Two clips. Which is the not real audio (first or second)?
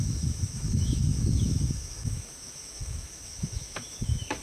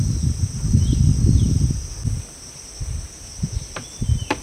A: first